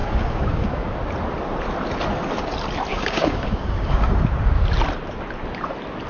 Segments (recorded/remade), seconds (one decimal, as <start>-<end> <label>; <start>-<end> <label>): 0.0-0.9 remade; 0.9-2.9 recorded; 2.9-4.1 remade; 4.1-6.1 recorded